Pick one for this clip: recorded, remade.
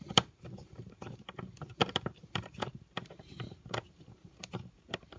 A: remade